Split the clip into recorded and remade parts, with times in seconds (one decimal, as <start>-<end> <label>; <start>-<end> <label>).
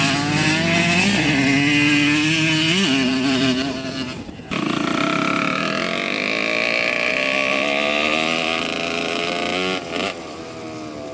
0.0-3.1 recorded; 3.1-7.1 remade; 7.1-11.1 recorded